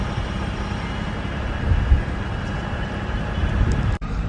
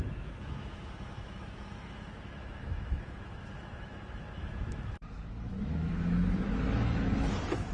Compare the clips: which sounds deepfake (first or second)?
second